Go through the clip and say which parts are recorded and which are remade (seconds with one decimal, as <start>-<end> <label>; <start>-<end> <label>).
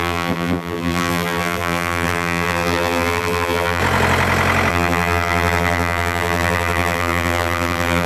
0.0-3.8 remade; 3.8-4.7 recorded; 4.7-8.1 remade